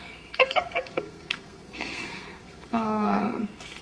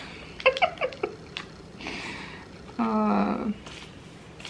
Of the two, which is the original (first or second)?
second